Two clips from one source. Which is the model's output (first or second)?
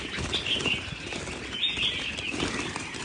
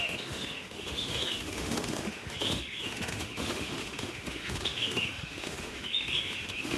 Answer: second